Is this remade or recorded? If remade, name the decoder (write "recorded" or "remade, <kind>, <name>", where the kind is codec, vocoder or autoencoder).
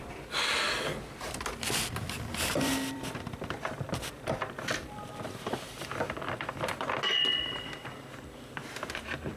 remade, vocoder, BigVGAN v2